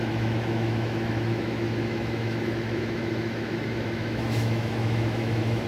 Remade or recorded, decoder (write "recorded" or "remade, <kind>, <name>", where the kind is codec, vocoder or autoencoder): remade, autoencoder, DAC-VAE